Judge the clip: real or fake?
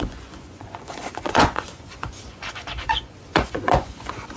fake